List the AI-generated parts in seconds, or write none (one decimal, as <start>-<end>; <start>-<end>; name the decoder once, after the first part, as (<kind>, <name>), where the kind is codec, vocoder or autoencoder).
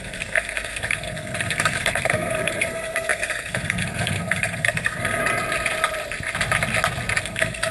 0.0-5.2 (codec, SNAC); 7.2-7.7